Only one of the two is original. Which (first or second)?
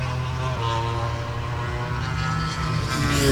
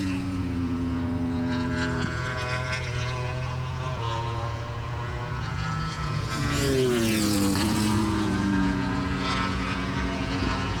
first